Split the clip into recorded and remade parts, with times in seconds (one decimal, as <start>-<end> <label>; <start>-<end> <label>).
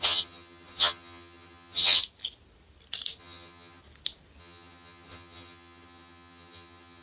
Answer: 0.0-2.0 remade; 2.0-3.2 recorded; 3.2-3.8 remade; 3.8-4.4 recorded; 4.4-7.0 remade